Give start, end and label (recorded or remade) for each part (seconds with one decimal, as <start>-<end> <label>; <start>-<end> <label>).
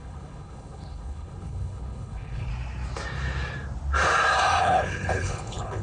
0.0-2.5 remade; 2.5-4.6 recorded; 4.6-5.8 remade